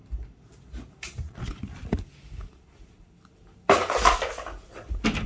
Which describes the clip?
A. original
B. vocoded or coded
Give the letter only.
A